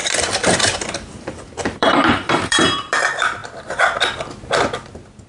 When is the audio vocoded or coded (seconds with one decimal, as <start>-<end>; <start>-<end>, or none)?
0.0-3.0